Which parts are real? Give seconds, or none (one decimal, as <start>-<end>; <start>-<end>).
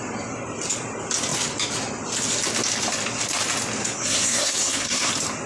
0.0-3.8; 5.1-5.5